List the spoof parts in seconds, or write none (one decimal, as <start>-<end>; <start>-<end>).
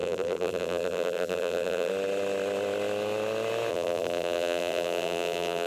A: 0.0-1.9; 3.7-5.7